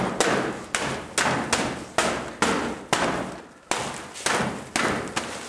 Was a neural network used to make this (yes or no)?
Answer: no